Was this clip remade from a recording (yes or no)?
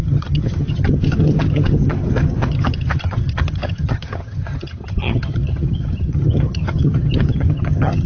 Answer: yes